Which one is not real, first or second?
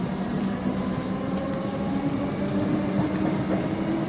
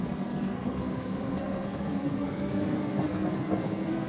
second